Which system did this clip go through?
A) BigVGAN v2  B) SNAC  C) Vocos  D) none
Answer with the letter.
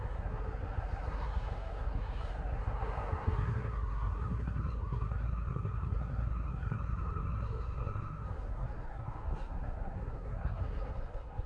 B